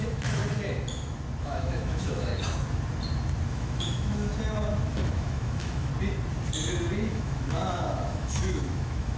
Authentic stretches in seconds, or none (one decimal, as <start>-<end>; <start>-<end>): 0.4-1.4; 2.3-3.5; 4.3-4.9; 5.9-7.1